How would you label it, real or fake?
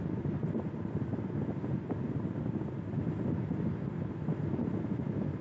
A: real